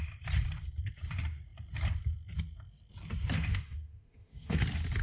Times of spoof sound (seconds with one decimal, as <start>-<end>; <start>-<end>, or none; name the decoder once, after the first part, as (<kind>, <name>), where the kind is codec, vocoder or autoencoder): 3.5-4.6 (autoencoder, DAC-VAE)

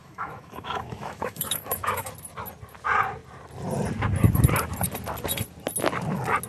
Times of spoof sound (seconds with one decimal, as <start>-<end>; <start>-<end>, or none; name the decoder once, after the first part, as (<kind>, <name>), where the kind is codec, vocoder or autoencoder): 0.0-2.1 (autoencoder, DAC-VAE)

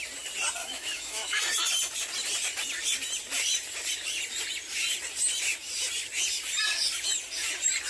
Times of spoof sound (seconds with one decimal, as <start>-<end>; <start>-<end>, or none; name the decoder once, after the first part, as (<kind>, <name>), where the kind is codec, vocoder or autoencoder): 0.6-1.4 (autoencoder, DAC-VAE)